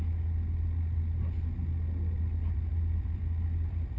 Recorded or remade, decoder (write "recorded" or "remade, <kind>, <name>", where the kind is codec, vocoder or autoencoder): recorded